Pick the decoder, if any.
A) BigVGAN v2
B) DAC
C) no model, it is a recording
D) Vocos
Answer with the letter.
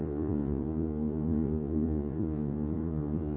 D